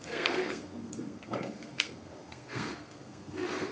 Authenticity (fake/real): fake